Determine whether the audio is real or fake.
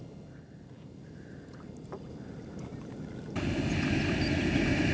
real